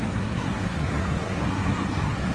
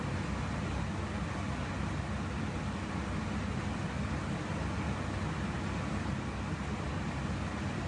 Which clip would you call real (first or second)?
second